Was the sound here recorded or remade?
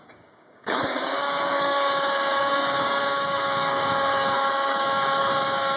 remade